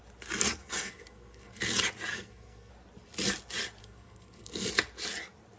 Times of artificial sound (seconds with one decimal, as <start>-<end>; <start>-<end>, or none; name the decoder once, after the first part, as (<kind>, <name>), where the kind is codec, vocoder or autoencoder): 0.6-1.6 (codec, SNAC); 2.1-2.7; 3.8-4.7